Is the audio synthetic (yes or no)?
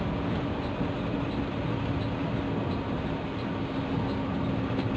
no